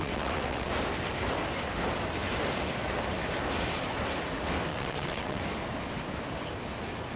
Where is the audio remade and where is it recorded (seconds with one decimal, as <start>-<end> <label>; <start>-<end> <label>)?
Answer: 0.0-0.7 remade; 0.7-4.7 recorded; 4.7-5.4 remade; 5.4-7.2 recorded